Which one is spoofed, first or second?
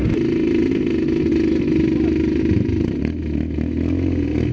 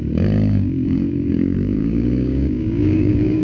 second